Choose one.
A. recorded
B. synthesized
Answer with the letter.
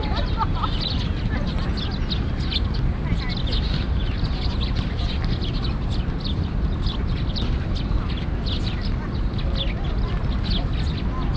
A